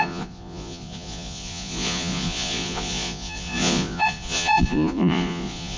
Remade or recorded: remade